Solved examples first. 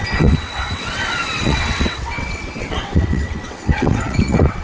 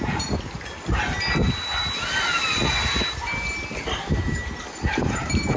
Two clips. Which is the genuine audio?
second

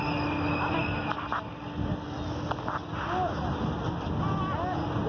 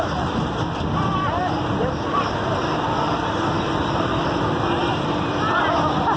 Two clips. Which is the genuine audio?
first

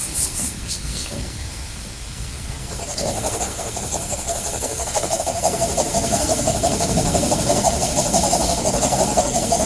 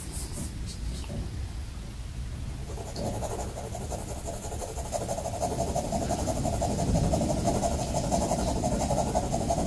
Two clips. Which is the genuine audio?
second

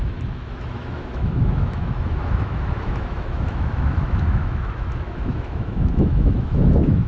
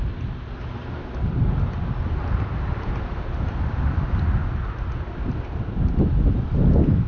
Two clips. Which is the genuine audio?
second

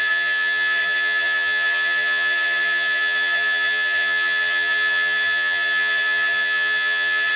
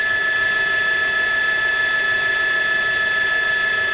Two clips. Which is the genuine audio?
second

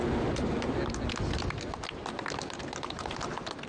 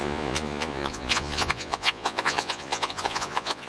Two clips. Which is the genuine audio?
first